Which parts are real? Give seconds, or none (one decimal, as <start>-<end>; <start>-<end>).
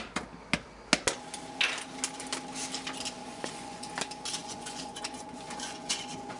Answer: 0.0-3.3; 3.9-4.4